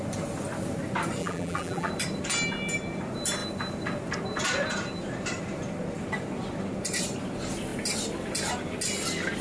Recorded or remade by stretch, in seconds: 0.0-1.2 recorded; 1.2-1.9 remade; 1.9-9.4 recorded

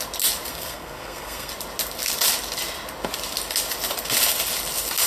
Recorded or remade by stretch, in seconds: 0.0-0.5 recorded; 0.5-1.5 remade; 1.5-5.1 recorded

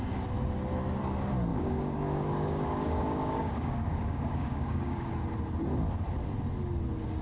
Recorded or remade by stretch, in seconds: 0.0-1.5 recorded; 1.5-5.1 remade; 5.1-7.2 recorded

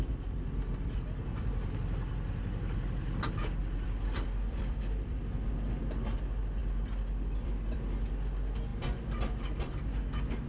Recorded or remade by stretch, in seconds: 0.0-3.6 recorded; 3.6-5.8 remade; 5.8-6.6 recorded; 6.6-7.8 remade; 7.8-10.5 recorded

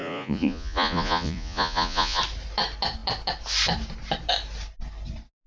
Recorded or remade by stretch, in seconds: 0.0-2.2 remade; 2.2-5.5 recorded

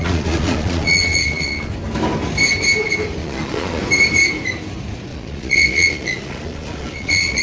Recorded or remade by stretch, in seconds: 0.0-1.7 remade; 1.7-3.2 recorded; 3.2-3.8 remade; 3.8-5.1 recorded; 5.1-7.4 remade